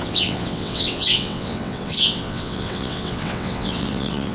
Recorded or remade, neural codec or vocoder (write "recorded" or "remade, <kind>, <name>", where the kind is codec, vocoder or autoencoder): remade, vocoder, WaveNeXt